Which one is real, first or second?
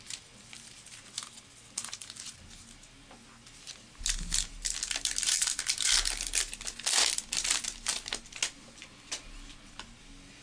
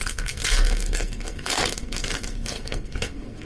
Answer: first